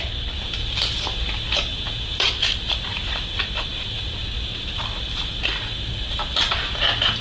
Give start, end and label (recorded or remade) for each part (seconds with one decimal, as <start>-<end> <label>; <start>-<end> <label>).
0.0-1.7 recorded; 1.7-2.3 remade; 2.3-7.2 recorded